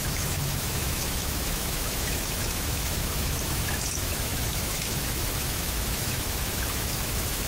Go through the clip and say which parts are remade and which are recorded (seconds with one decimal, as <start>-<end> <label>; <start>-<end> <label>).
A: 0.0-7.5 remade